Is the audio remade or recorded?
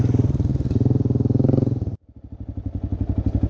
recorded